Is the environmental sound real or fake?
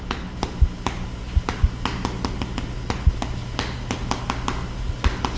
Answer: real